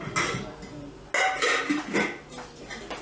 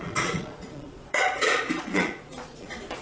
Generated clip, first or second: second